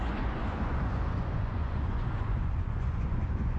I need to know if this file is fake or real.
fake